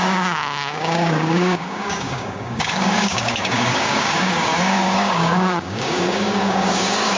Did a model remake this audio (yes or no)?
yes